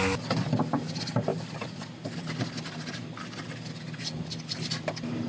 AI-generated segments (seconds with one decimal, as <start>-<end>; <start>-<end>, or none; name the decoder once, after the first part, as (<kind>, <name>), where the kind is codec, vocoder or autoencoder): none